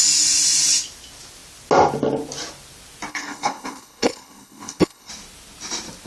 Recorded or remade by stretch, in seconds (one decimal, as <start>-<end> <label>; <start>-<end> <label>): 0.0-3.1 recorded; 3.1-5.1 remade; 5.1-6.1 recorded